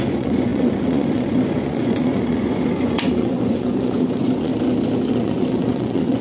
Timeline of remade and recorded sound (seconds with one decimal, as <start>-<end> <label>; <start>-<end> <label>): 0.0-4.5 remade; 4.5-5.1 recorded; 5.1-6.2 remade